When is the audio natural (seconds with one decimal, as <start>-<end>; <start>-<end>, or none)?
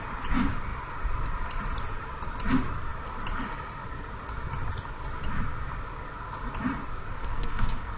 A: 0.0-7.1